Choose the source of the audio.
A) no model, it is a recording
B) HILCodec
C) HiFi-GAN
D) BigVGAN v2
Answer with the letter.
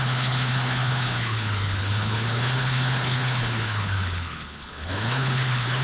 B